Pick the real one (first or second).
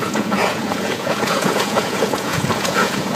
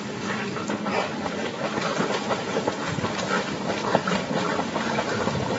second